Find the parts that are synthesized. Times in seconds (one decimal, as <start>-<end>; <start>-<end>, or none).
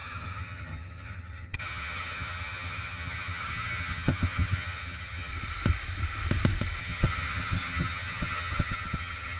0.0-5.3; 6.8-9.4